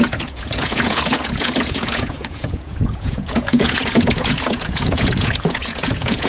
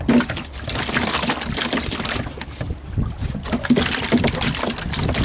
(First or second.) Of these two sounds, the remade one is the first